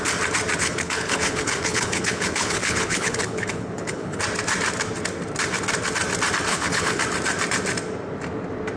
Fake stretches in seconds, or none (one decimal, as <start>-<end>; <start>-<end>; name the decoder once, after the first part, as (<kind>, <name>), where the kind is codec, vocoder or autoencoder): 0.6-4.2 (codec, HILCodec); 6.5-7.0